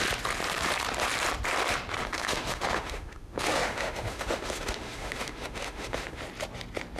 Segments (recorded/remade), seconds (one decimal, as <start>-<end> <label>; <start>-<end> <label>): 0.0-2.0 recorded; 2.0-6.2 remade; 6.2-7.0 recorded